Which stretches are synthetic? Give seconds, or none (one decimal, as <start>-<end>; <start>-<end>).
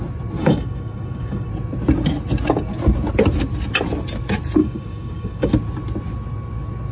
0.4-1.5; 4.6-5.5